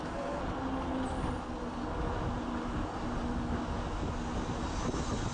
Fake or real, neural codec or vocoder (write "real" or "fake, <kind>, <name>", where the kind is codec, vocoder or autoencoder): real